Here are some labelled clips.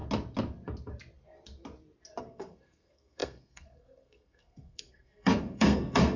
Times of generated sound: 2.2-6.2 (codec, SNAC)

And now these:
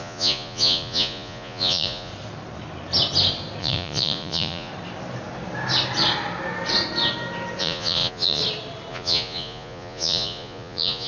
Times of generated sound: 0.0-2.1 (vocoder, Vocos); 3.6-4.7; 7.6-8.4; 8.9-11.1

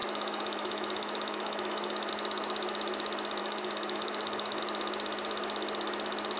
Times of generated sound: 0.0-2.1 (autoencoder, DAC-VAE); 3.4-4.6

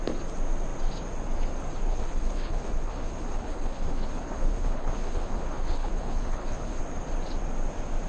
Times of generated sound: 1.9-6.8 (codec, HILCodec)

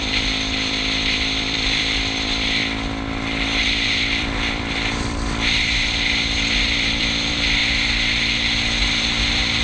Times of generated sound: 0.0-2.6 (vocoder, BigVGAN v2); 3.6-7.6; 8.8-9.6

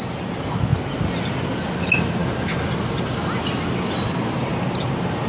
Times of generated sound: none

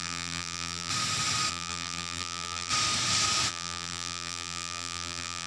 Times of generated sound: 0.0-0.9 (vocoder, BigVGAN v2); 1.5-2.7; 3.5-5.5

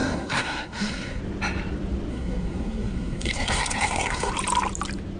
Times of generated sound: 0.0-1.2 (codec, SNAC); 2.1-4.3